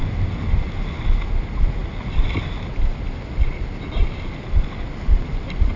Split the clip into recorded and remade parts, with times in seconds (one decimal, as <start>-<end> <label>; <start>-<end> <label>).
0.0-5.8 recorded